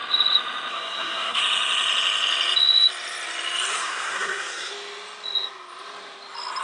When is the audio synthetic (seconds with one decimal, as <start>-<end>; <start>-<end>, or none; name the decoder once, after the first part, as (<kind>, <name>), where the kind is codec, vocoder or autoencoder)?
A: 0.7-1.4 (codec, SNAC); 3.7-4.7